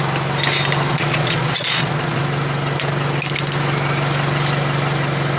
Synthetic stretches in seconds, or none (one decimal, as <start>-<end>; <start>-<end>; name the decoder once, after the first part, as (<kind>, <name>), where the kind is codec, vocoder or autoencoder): 0.9-2.2 (vocoder, Vocos)